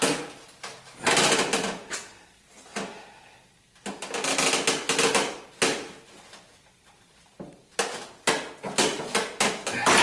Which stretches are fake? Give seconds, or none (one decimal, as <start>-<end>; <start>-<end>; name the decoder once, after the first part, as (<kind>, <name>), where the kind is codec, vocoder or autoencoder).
none